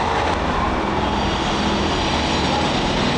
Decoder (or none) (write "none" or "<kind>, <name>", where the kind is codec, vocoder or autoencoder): none